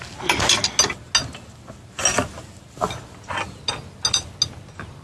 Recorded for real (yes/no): yes